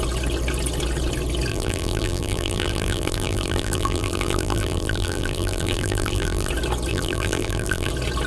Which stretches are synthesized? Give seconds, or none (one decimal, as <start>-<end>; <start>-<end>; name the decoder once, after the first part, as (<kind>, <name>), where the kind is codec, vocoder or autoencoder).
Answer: 1.5-6.5 (vocoder, BigVGAN v2); 6.9-7.9